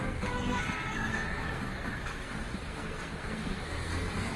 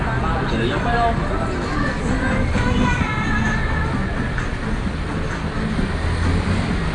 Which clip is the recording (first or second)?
second